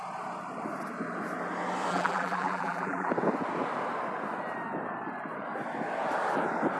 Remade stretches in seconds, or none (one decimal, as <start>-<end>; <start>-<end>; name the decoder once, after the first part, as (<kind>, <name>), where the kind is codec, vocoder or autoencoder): 1.9-3.1 (vocoder, BigVGAN v2)